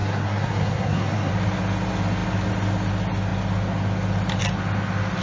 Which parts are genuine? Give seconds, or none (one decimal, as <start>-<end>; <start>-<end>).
1.3-5.2